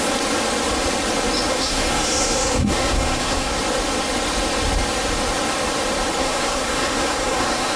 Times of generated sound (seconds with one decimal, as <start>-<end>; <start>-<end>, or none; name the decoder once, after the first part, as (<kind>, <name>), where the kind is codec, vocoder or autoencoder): 1.5-3.6 (codec, SNAC); 6.2-7.8